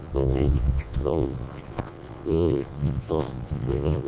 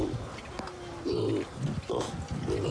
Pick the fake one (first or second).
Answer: first